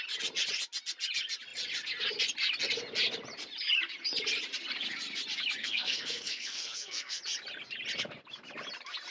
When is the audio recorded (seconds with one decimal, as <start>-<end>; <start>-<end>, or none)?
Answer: 0.0-5.6; 7.2-9.1